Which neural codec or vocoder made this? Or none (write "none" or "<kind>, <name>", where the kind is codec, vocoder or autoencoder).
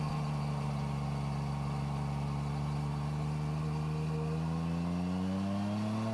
none